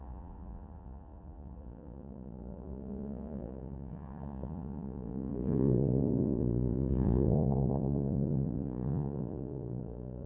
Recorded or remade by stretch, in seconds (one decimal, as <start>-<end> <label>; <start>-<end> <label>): 0.0-10.3 remade